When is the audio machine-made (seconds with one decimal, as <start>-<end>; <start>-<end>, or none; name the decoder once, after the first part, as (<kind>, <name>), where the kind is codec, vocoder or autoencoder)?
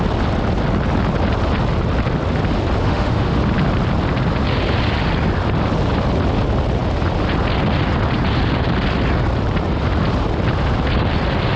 2.8-3.4 (autoencoder, DAC-VAE)